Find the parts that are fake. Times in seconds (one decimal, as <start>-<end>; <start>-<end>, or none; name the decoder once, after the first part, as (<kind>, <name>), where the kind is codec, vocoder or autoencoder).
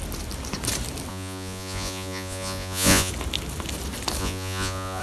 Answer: 1.1-3.1 (vocoder, Vocos); 4.2-5.0